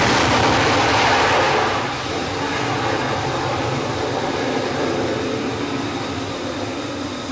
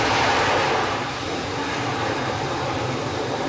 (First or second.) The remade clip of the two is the second